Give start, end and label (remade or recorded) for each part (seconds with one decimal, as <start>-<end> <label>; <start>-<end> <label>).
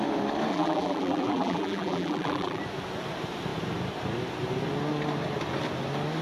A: 0.0-0.5 recorded; 0.5-2.6 remade; 2.6-6.2 recorded